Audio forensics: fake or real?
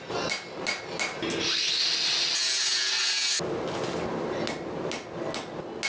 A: real